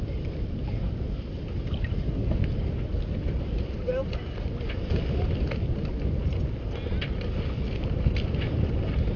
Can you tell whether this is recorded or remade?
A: recorded